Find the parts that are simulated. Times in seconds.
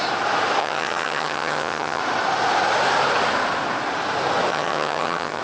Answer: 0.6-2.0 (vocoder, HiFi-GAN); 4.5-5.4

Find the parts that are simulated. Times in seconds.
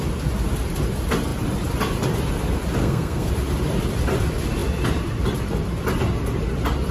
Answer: 2.8-3.3 (codec, SNAC)